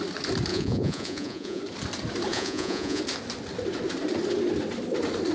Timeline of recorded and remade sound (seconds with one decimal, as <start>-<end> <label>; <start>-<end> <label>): 0.0-0.5 recorded; 0.5-1.6 remade; 1.6-2.3 recorded; 2.3-3.0 remade; 3.0-5.3 recorded